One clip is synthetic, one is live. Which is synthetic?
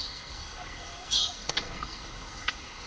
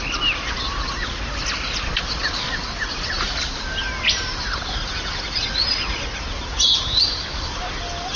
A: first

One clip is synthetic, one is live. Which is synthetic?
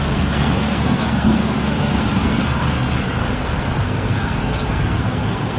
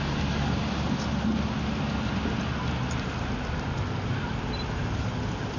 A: first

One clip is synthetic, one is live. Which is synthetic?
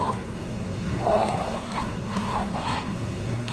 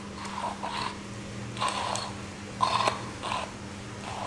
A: first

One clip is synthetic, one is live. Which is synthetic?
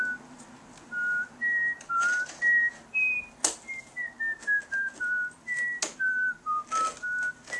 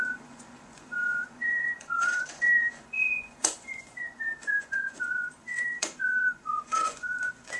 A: second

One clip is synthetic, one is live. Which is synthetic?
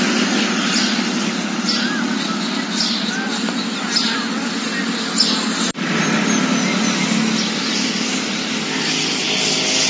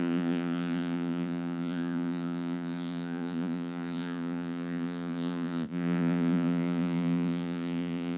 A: second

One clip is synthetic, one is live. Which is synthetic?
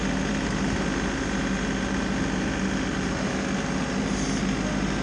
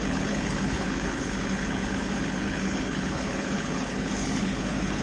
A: second